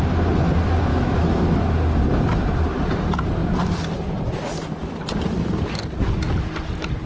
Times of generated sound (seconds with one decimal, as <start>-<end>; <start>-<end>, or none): 0.9-1.6